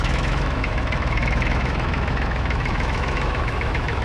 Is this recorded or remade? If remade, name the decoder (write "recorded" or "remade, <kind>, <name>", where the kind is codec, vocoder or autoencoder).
remade, autoencoder, DAC-VAE